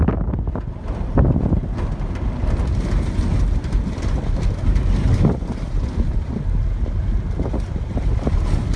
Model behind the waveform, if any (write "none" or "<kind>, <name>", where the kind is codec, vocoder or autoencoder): none